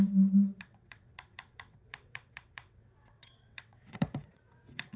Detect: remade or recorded remade